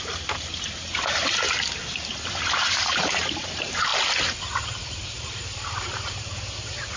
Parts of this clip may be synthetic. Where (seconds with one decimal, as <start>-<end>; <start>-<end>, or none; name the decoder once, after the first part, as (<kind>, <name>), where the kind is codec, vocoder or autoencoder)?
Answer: 0.0-3.9 (vocoder, BigVGAN v2); 4.4-7.0